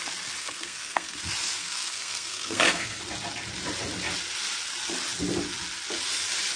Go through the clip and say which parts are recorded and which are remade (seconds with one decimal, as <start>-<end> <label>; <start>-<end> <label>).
0.0-0.4 recorded; 0.4-1.2 remade; 1.2-1.6 recorded; 1.6-3.0 remade; 3.0-6.6 recorded